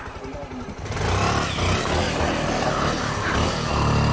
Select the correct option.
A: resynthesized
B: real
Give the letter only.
B